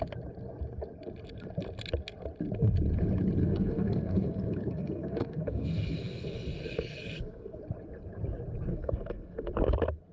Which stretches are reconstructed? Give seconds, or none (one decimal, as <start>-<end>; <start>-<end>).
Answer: 3.4-7.6; 8.7-9.5